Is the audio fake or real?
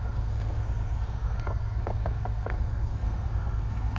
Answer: fake